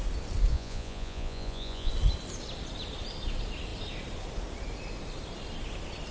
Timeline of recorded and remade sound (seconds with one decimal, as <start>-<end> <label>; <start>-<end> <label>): 0.0-0.5 recorded; 0.5-1.9 remade; 1.9-6.1 recorded